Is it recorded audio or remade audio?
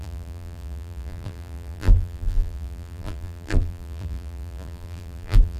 remade